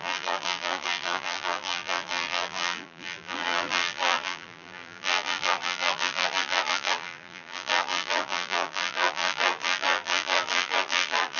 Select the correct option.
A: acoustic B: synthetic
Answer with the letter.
B